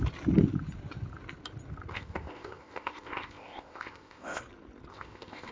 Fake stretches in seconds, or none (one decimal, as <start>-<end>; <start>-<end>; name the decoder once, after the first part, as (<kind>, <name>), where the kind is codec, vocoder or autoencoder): 1.9-4.4 (codec, ZipCodec); 4.9-5.5